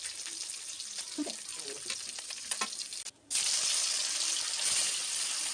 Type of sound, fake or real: real